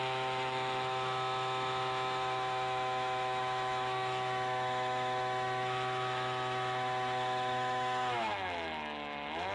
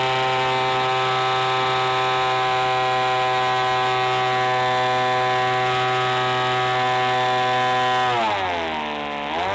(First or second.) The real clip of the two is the second